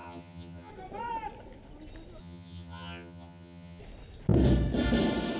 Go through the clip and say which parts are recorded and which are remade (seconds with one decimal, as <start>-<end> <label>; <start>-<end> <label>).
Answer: 0.0-0.7 remade; 0.7-2.2 recorded; 2.2-3.8 remade; 3.8-5.4 recorded